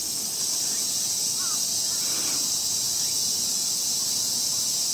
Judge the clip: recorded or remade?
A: recorded